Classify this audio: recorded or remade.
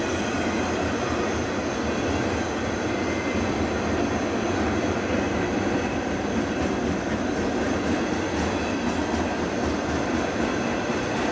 recorded